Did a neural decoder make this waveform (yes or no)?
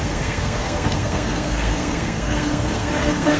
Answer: yes